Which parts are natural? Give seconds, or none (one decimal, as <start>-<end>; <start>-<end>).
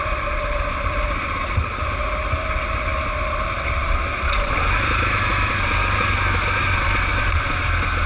0.0-7.1